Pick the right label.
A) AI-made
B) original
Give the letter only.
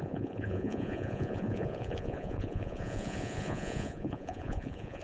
A